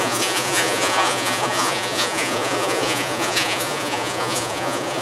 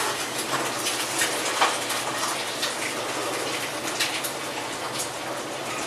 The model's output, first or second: first